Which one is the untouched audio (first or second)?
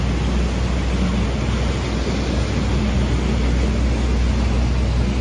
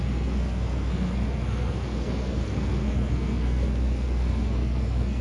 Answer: first